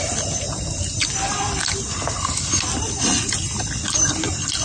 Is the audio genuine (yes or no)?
yes